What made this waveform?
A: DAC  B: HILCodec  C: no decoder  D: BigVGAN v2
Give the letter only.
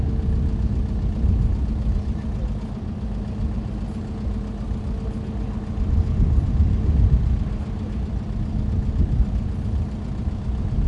C